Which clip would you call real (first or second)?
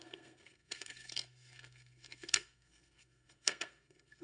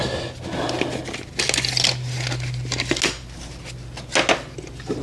second